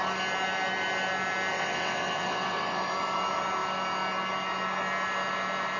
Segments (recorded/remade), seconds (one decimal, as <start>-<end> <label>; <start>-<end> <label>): 0.0-1.5 recorded; 1.5-2.8 remade; 2.8-5.8 recorded